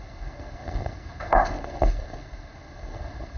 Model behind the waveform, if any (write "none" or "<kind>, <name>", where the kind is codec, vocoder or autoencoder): codec, SNAC